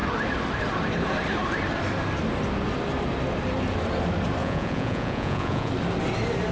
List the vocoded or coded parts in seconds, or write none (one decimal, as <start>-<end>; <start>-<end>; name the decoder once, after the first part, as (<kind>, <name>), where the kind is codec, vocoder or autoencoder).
4.4-5.7 (vocoder, Vocos)